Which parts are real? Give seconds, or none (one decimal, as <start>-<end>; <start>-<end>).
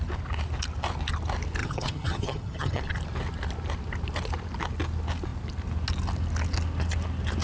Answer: 0.0-1.6; 2.8-7.4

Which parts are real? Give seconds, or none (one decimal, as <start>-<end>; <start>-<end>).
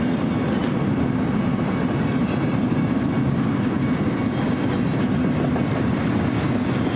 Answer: 0.0-7.0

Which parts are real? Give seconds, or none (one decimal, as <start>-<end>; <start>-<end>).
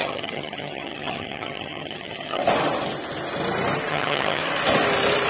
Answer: 2.4-3.9; 4.4-5.3